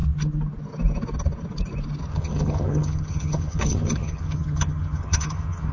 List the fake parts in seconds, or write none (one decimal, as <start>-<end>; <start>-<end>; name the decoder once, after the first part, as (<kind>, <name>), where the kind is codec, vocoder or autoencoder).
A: 2.1-5.7 (vocoder, HiFi-GAN)